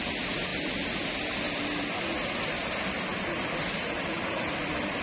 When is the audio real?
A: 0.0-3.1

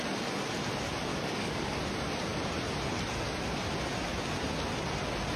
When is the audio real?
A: 0.0-1.1; 1.8-5.4

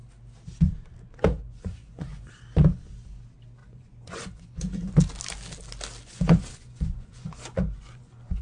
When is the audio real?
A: 0.0-1.1; 2.3-3.6; 4.9-6.0

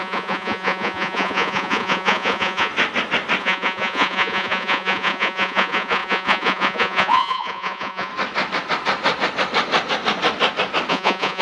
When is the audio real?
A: 2.7-3.4; 8.1-10.9

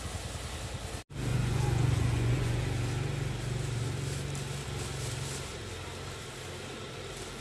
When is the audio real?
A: 0.0-1.3; 2.6-7.4

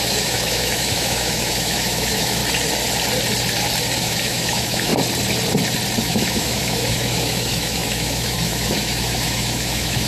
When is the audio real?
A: 2.4-4.0; 4.9-6.0

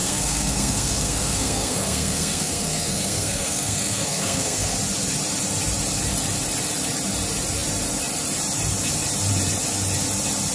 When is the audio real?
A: 4.7-10.5

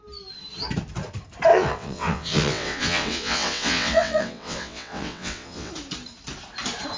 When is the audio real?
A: 0.0-1.5; 5.7-7.0